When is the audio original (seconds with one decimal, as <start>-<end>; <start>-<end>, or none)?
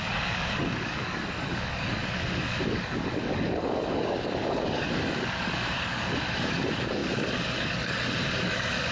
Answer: none